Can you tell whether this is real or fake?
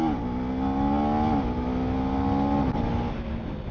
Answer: real